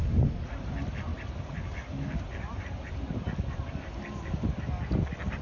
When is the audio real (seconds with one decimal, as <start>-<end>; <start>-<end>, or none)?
0.0-1.1; 3.9-5.4